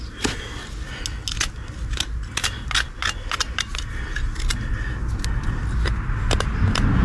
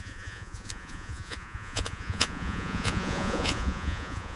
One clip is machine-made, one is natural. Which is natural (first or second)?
first